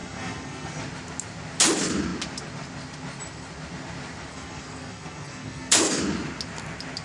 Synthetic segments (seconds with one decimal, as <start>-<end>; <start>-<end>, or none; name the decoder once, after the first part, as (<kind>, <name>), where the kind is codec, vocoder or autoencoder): 0.0-0.8 (codec, SNAC); 4.3-6.0